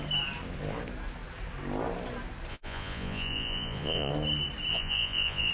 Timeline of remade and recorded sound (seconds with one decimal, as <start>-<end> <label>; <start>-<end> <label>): 0.0-2.5 recorded; 2.5-4.1 remade; 4.1-4.7 recorded; 4.7-5.5 remade